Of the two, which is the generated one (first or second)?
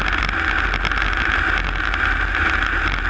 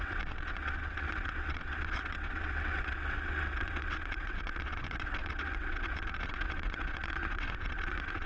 second